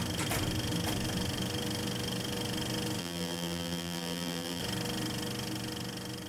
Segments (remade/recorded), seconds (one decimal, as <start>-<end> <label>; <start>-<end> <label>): 0.0-3.0 recorded; 3.0-4.6 remade; 4.6-6.3 recorded